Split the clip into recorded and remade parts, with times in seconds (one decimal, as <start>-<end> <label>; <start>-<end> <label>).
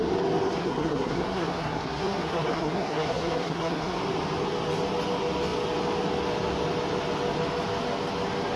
0.0-0.6 recorded; 0.6-4.0 remade; 4.0-8.6 recorded